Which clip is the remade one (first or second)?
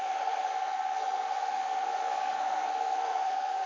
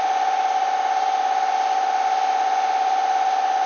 first